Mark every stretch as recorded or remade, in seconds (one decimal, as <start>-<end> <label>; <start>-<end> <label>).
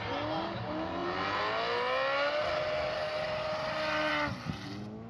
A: 0.0-5.1 recorded